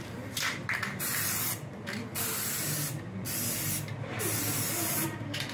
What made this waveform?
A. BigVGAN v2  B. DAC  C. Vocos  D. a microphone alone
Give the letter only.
D